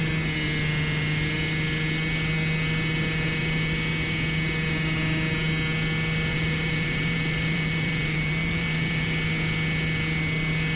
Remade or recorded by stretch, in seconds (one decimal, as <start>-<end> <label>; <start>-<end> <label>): 0.0-6.3 recorded; 6.3-9.1 remade; 9.1-10.8 recorded